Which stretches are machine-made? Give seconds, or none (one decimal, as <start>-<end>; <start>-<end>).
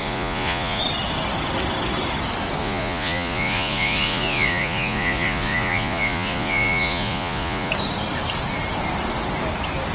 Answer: 0.0-0.8; 2.6-7.7